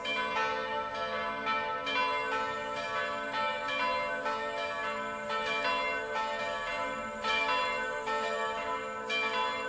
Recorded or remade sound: recorded